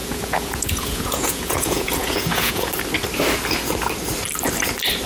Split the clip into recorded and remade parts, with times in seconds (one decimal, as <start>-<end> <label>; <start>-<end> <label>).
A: 0.0-2.7 remade; 2.7-5.1 recorded